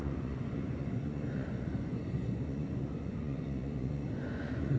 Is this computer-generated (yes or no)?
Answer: yes